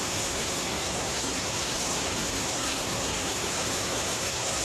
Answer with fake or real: fake